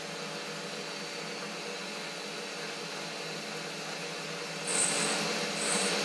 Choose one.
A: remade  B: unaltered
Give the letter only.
B